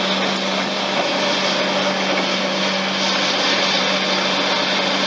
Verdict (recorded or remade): recorded